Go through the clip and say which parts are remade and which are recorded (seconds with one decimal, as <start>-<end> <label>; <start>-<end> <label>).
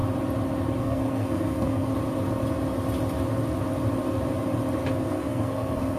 0.0-0.8 recorded; 0.8-1.9 remade; 1.9-4.9 recorded; 4.9-6.0 remade